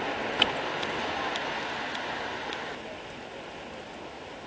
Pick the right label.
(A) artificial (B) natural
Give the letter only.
B